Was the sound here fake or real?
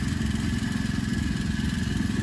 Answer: real